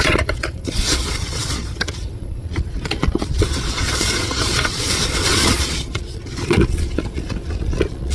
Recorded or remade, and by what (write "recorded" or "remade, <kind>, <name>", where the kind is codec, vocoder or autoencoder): remade, vocoder, Vocos